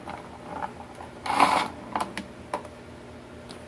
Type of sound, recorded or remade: recorded